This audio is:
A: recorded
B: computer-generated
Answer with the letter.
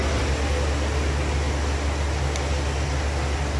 A